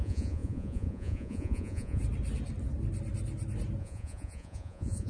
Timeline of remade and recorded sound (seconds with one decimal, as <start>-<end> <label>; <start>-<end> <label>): 0.0-2.0 remade; 2.0-3.8 recorded; 3.8-5.1 remade

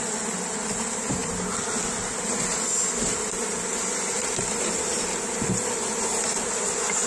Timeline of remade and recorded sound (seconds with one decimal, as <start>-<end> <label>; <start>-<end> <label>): 0.0-7.1 recorded

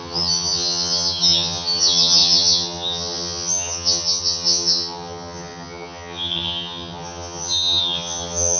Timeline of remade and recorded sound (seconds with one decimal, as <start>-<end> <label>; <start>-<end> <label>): 0.0-8.6 remade